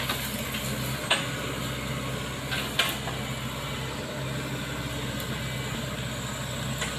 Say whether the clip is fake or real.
real